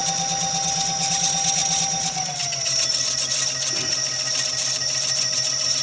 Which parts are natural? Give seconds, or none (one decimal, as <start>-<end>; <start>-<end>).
0.0-5.8